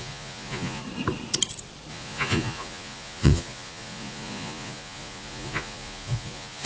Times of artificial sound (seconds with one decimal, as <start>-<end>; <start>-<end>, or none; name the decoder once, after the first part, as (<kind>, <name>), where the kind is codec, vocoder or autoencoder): 0.0-0.8 (vocoder, Vocos); 1.9-6.7